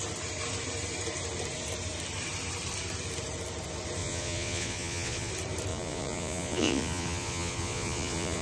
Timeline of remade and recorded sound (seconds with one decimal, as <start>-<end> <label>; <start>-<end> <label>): 0.0-4.0 recorded; 4.0-5.3 remade; 5.3-5.7 recorded; 5.7-8.4 remade